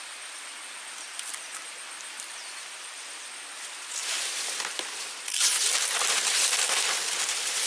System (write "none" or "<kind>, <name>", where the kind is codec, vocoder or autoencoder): none